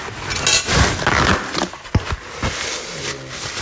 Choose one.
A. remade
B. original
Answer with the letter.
B